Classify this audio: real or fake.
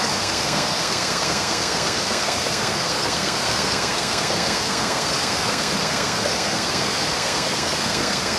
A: fake